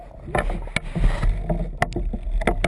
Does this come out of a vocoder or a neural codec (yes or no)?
no